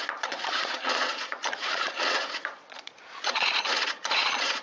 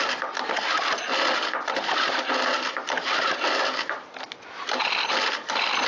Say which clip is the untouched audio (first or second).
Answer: second